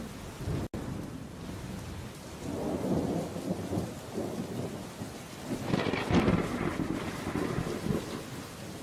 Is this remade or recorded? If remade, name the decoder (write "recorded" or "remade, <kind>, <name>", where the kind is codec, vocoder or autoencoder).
recorded